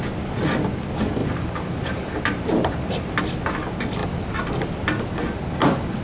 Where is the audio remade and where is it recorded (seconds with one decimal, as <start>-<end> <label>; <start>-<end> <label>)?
0.0-1.2 recorded; 1.2-3.2 remade; 3.2-6.0 recorded